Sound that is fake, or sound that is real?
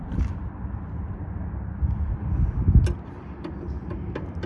real